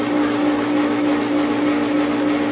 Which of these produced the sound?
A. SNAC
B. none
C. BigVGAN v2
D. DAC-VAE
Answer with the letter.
B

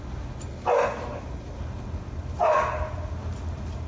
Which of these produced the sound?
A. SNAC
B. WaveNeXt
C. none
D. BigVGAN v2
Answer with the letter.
C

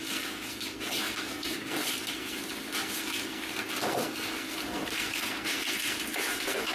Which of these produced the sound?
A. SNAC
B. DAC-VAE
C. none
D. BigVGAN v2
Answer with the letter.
A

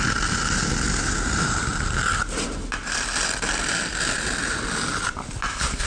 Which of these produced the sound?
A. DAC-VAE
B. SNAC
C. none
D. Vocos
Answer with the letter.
C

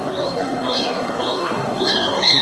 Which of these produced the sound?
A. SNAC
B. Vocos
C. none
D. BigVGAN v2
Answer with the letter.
A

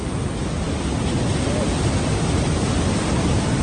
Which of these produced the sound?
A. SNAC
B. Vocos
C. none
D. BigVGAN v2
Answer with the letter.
C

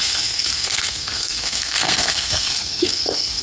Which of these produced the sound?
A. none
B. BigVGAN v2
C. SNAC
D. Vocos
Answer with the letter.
C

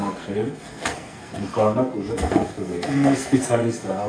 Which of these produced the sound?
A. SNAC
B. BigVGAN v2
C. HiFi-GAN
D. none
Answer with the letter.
A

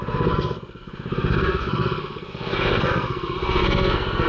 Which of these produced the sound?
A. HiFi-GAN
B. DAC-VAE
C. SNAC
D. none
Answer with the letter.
C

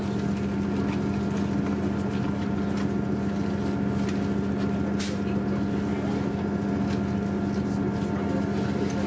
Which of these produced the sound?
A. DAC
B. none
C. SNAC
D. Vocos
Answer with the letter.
B